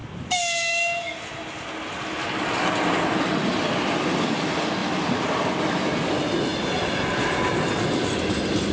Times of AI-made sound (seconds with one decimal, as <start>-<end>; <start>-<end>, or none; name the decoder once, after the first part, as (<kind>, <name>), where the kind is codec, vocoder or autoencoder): 4.8-5.7 (vocoder, BigVGAN v2)